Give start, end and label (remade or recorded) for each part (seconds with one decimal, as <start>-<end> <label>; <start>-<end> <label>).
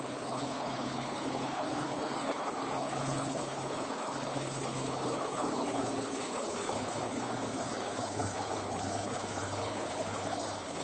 0.0-10.8 remade